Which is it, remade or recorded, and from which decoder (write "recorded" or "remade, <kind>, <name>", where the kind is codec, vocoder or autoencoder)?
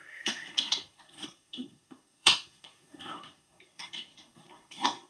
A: remade, codec, SNAC